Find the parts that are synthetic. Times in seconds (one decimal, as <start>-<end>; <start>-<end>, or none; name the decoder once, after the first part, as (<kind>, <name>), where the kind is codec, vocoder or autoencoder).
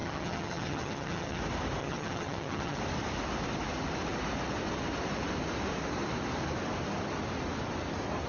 0.0-1.4 (vocoder, HiFi-GAN); 1.8-2.8